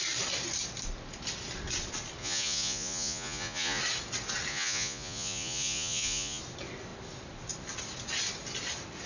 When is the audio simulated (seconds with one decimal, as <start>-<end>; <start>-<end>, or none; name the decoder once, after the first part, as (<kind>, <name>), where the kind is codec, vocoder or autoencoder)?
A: 2.2-3.8 (vocoder, Vocos); 4.5-6.4